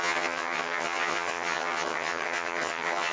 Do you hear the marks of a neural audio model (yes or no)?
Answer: yes